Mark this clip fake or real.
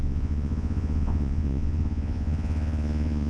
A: fake